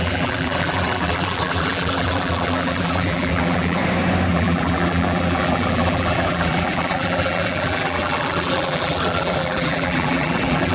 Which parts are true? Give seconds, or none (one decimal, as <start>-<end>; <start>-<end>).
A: 3.8-4.3